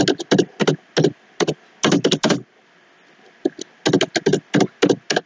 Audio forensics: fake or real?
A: real